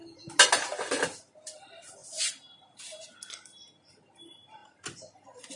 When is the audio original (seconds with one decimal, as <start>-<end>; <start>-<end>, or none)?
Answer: 0.0-5.6